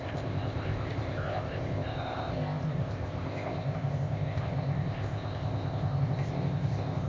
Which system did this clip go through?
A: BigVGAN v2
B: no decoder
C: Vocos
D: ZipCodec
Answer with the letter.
D